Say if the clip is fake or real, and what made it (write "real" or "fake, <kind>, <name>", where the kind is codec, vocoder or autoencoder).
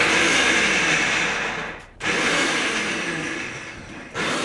real